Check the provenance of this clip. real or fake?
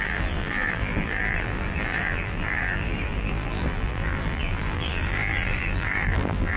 fake